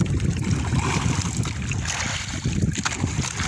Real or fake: real